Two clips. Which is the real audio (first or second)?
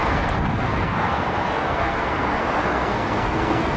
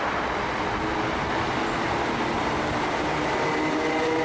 second